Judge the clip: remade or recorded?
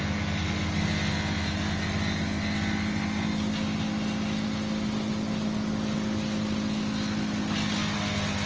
recorded